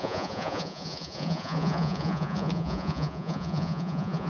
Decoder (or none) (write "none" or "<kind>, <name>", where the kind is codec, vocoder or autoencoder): vocoder, Vocos